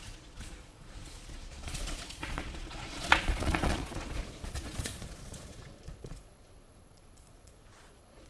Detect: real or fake fake